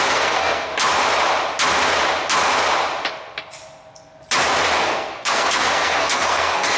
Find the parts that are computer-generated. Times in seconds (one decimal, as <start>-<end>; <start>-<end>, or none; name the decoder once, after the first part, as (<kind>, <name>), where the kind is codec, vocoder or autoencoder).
0.0-0.7 (codec, SNAC); 4.8-6.8